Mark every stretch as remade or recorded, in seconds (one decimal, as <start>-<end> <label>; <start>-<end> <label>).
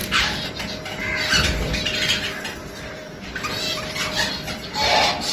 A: 0.0-0.5 remade; 0.5-1.0 recorded; 1.0-4.2 remade; 4.2-5.3 recorded